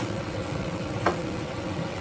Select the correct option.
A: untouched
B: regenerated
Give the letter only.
B